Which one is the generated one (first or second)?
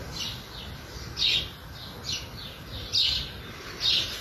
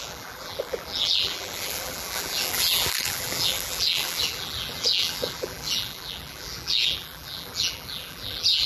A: second